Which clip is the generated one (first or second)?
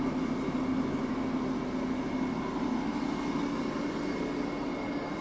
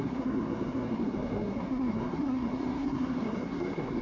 second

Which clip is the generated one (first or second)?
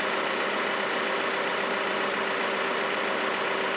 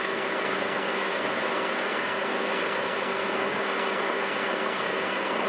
second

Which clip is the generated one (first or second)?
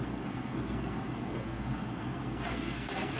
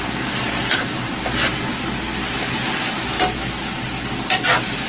first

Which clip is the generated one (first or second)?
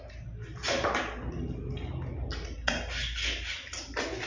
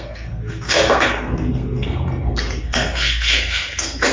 second